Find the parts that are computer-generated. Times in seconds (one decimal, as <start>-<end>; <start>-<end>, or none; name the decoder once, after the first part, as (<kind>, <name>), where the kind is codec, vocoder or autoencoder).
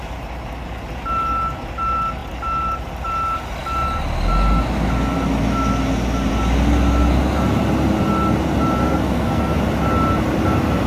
8.8-9.6 (codec, SNAC)